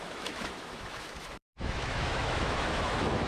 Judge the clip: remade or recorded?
remade